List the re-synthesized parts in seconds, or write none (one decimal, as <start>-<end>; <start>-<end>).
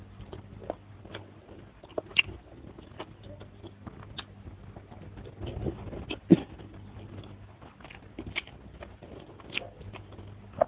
none